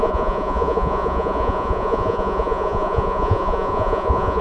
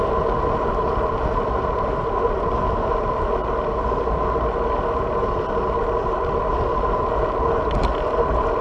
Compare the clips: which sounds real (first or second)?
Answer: second